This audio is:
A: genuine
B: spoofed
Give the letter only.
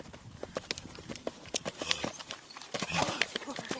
B